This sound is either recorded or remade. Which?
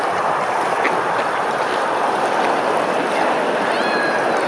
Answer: remade